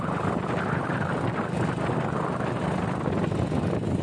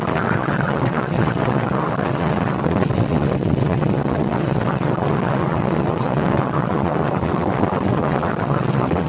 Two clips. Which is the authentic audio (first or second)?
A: first